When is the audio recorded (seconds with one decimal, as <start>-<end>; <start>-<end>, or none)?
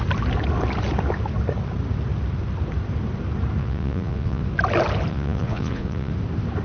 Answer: 0.0-3.6; 4.4-5.1; 6.1-6.6